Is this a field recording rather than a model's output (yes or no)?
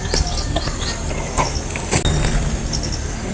yes